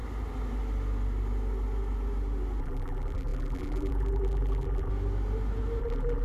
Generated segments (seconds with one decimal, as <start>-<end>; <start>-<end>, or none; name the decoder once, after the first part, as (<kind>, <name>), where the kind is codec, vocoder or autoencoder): 2.6-4.9 (vocoder, BigVGAN v2); 5.8-6.2